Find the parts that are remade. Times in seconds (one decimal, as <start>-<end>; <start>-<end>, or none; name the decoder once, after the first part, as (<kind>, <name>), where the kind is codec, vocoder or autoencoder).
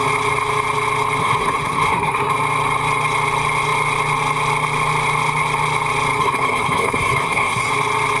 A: 1.2-2.3 (codec, SNAC); 6.2-7.7